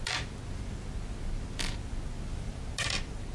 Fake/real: real